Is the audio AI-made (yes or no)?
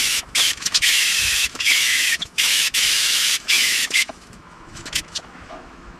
yes